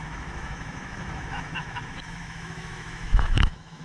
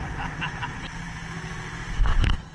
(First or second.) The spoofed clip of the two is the first